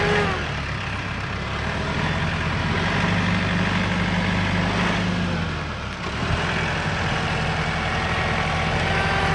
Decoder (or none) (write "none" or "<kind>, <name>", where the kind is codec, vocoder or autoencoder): none